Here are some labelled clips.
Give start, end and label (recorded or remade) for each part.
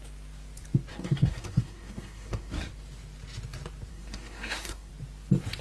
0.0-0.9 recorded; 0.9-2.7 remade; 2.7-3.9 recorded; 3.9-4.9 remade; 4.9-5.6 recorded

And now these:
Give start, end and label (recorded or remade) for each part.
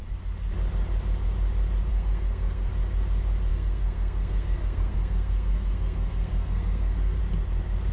0.0-1.9 recorded; 1.9-2.7 remade; 2.7-3.5 recorded; 3.5-7.2 remade; 7.2-7.9 recorded